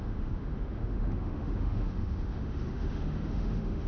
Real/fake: fake